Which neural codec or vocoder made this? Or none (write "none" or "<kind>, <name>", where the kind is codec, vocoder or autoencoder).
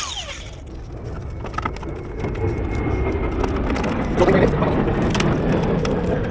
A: none